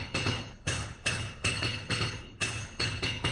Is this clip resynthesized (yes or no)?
yes